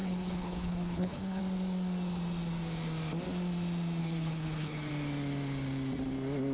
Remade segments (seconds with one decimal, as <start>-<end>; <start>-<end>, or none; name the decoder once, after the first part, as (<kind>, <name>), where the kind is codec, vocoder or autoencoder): 0.0-1.4 (codec, HILCodec); 4.0-4.9

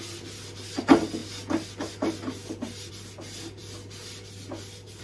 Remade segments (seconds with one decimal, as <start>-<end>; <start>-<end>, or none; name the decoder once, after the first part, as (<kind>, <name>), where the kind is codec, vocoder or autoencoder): none

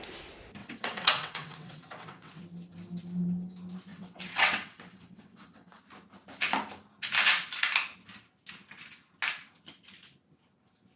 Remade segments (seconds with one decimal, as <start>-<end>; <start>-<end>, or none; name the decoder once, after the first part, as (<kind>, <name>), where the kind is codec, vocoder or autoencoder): 0.6-2.4 (vocoder, WaveNeXt); 3.9-5.8

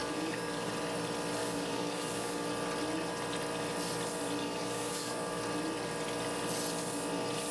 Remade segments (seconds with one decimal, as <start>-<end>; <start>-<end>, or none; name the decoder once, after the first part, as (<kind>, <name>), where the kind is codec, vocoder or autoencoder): 0.0-0.7 (codec, DAC); 1.4-2.5; 4.4-5.4

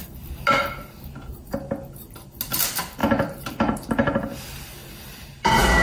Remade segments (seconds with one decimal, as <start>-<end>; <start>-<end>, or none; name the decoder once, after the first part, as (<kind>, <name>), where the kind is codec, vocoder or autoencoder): none

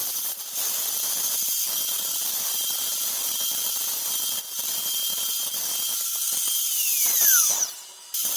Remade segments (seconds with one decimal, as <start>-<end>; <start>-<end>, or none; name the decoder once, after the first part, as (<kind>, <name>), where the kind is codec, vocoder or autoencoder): none

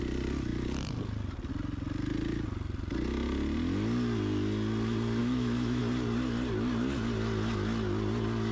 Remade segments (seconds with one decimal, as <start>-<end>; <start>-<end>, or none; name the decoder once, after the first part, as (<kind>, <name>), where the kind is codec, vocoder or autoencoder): 5.2-5.8 (autoencoder, DAC-VAE)